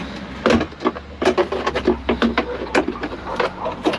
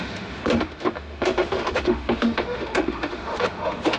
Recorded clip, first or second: first